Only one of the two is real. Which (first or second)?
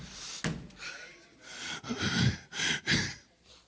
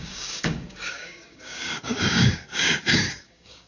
first